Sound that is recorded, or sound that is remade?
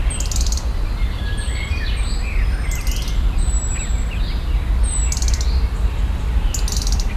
recorded